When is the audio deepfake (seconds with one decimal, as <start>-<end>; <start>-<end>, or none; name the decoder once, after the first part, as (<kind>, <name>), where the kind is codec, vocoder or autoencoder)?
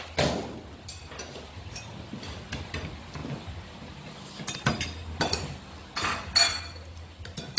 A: none